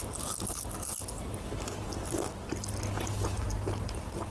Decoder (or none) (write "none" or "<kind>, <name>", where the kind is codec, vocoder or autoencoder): none